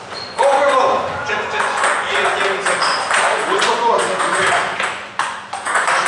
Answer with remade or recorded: remade